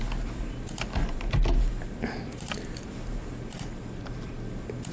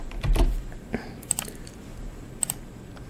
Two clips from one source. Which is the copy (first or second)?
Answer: second